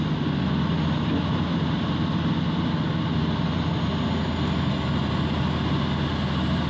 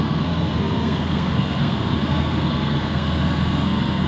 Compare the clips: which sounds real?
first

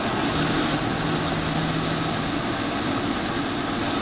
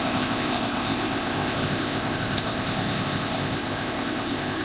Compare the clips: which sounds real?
first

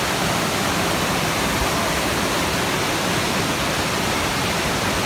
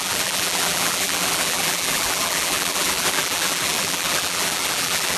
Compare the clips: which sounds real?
first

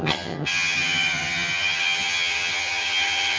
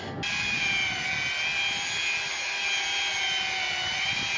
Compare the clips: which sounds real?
second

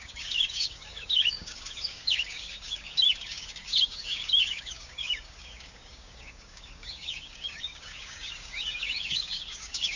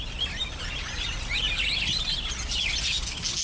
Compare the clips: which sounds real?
second